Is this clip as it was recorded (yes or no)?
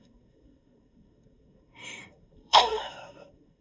no